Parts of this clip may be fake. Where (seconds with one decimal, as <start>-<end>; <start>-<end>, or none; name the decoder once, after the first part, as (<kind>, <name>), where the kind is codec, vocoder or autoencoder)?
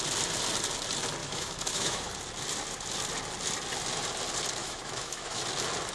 1.2-2.1 (autoencoder, DAC-VAE); 4.6-5.4